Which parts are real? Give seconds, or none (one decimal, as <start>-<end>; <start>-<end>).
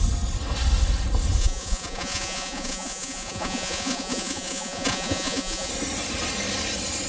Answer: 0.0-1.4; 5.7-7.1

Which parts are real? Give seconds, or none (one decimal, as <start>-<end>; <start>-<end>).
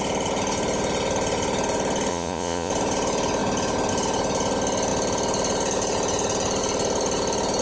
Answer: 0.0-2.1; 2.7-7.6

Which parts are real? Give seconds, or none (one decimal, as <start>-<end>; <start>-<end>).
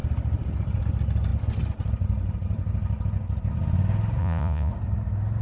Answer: 0.0-4.2; 4.7-5.4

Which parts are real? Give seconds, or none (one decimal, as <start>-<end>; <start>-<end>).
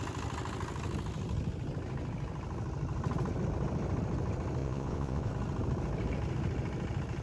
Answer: 0.0-4.6; 5.3-7.2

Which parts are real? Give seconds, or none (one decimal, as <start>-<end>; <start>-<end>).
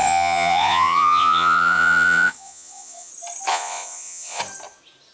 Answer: 3.1-3.5; 4.4-5.1